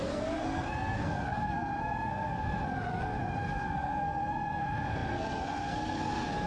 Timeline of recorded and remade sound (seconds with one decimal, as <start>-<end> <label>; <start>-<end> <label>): 0.0-6.5 remade